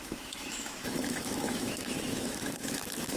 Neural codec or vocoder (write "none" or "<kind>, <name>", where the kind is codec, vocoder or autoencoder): autoencoder, DAC-VAE